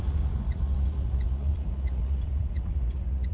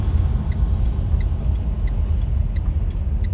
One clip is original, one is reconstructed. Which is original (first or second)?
second